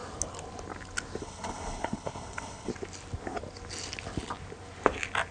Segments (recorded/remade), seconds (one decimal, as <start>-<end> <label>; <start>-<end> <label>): 0.0-1.2 recorded; 1.2-2.7 remade; 2.7-5.3 recorded